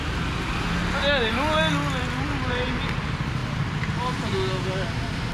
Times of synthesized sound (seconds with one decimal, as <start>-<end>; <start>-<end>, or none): none